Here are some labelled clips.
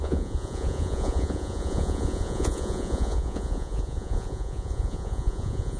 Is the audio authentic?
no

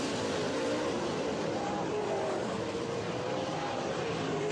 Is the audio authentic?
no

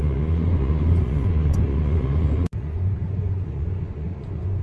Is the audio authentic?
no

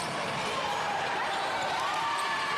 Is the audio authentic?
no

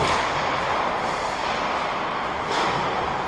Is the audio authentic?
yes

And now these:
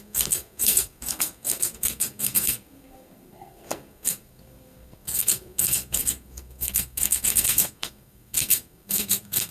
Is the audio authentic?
no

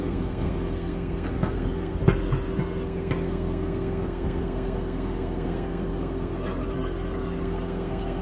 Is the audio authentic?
no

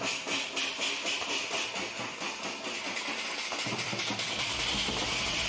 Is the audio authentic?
yes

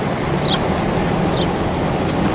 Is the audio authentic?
yes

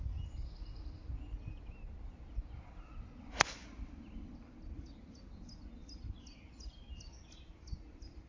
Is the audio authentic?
yes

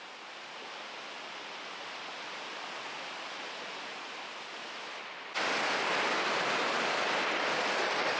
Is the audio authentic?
yes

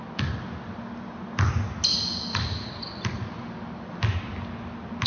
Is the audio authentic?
yes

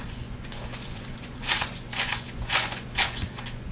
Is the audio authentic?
no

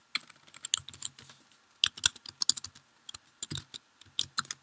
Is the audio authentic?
yes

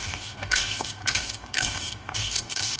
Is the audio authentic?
no